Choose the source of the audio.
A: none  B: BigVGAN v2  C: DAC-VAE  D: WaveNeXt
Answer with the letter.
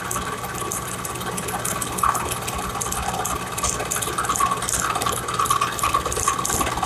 A